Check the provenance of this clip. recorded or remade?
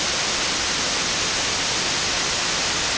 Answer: recorded